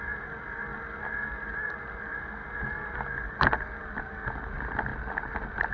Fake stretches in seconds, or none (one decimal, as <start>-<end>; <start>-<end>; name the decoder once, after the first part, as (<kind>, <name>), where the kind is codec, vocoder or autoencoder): none